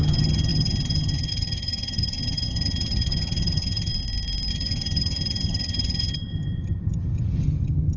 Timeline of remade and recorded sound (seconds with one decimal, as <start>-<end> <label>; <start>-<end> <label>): 0.0-3.9 remade; 3.9-4.5 recorded; 4.5-8.0 remade